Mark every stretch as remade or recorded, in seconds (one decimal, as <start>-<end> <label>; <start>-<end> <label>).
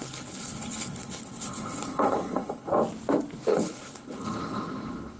0.0-2.7 remade; 2.7-3.5 recorded; 3.5-5.2 remade